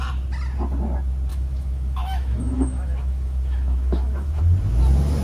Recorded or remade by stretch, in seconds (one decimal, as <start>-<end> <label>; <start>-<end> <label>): 0.0-1.3 recorded; 1.3-4.4 remade; 4.4-5.2 recorded